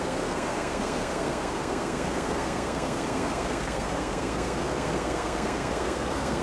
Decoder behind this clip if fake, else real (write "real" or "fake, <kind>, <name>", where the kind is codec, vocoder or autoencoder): fake, codec, SNAC